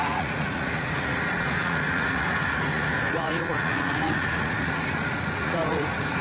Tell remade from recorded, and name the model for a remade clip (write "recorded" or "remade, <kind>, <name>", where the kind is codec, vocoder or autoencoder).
remade, vocoder, Vocos